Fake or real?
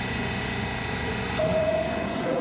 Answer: fake